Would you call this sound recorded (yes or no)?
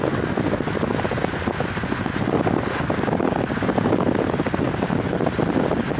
yes